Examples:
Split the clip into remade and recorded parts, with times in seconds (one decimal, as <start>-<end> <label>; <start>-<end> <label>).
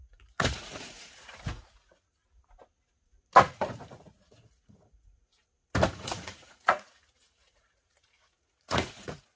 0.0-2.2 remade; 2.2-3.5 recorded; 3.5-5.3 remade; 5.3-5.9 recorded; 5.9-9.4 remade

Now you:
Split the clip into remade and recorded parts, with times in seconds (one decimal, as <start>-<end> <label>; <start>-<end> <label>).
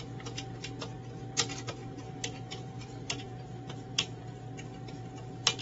0.0-1.8 recorded; 1.8-4.2 remade; 4.2-5.6 recorded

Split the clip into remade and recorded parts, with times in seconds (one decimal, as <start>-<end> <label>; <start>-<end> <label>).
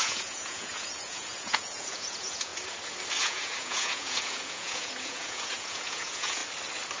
0.0-2.5 remade; 2.5-3.2 recorded; 3.2-6.4 remade; 6.4-7.0 recorded